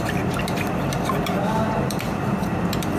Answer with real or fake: fake